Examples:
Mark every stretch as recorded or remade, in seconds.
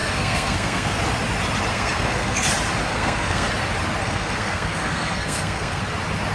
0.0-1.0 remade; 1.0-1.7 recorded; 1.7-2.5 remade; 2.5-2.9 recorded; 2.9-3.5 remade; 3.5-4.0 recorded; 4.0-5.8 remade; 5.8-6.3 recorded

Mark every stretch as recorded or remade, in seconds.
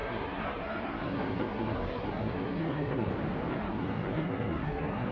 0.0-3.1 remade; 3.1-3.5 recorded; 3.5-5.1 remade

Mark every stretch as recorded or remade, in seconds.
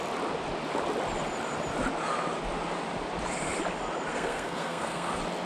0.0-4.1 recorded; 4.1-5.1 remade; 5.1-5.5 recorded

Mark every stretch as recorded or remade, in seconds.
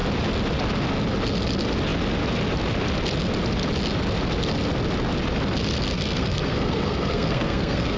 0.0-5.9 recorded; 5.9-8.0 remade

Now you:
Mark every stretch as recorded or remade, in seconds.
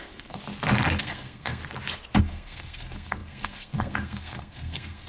0.0-0.4 remade; 0.4-1.0 recorded; 1.0-1.6 remade; 1.6-2.2 recorded; 2.2-5.1 remade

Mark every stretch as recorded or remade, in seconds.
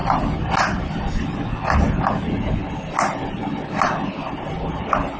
0.0-5.2 recorded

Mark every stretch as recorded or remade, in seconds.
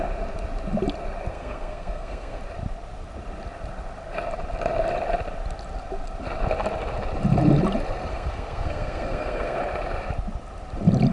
0.0-1.3 recorded; 1.3-2.4 remade; 2.4-8.1 recorded; 8.1-9.6 remade; 9.6-11.1 recorded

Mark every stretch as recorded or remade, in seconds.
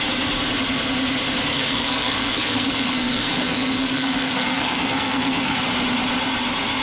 0.0-1.5 recorded; 1.5-5.6 remade; 5.6-6.8 recorded